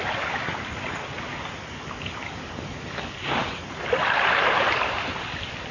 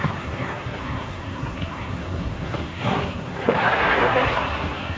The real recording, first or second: first